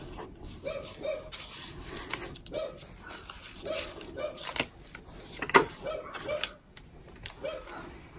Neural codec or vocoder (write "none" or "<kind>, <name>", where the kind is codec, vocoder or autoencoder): none